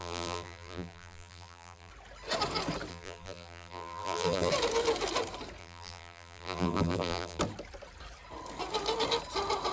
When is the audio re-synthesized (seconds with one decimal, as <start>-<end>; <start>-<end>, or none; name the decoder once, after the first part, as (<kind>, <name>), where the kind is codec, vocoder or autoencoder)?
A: 0.0-1.9 (vocoder, BigVGAN v2); 2.9-4.5; 5.6-7.4